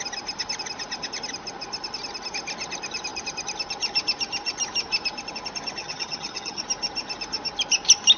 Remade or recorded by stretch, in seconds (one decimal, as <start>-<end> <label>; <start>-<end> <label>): 0.0-5.8 recorded; 5.8-6.6 remade; 6.6-8.2 recorded